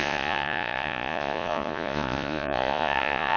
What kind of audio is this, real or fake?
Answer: fake